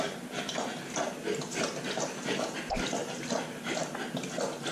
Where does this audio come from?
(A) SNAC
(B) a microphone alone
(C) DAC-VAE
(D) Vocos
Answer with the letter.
B